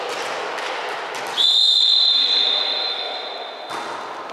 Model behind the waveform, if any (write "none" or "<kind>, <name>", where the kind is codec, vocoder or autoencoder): none